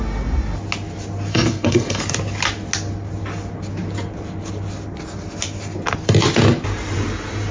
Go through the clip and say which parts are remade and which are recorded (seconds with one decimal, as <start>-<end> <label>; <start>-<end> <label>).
0.0-1.3 recorded; 1.3-2.0 remade; 2.0-7.5 recorded

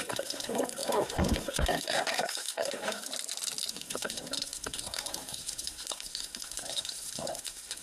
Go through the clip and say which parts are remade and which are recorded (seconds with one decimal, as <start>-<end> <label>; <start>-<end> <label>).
0.0-3.1 remade; 3.1-3.7 recorded; 3.7-7.8 remade

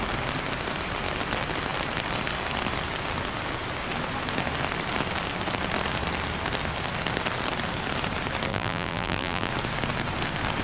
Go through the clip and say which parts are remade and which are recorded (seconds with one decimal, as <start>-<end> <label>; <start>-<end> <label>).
0.0-8.5 recorded; 8.5-9.5 remade; 9.5-10.6 recorded

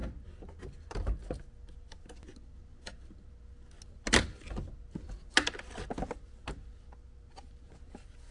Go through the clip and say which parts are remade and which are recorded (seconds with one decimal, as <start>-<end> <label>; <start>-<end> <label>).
0.0-8.3 recorded